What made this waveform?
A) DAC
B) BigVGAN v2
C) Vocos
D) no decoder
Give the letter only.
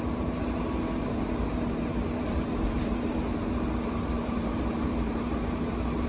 B